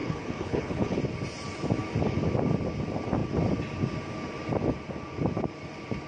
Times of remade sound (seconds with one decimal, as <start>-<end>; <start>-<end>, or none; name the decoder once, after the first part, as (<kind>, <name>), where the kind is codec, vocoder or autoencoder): 0.0-1.0 (codec, HILCodec)